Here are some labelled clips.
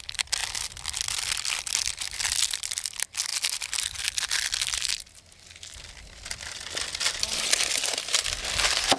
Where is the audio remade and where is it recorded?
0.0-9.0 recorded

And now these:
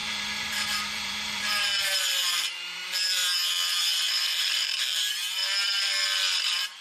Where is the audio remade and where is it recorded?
0.0-3.2 remade; 3.2-4.4 recorded; 4.4-5.4 remade; 5.4-6.8 recorded